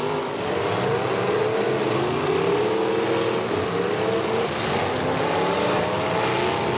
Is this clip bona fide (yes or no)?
yes